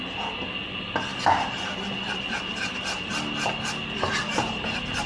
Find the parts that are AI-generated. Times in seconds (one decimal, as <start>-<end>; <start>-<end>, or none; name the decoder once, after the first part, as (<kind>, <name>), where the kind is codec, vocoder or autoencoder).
none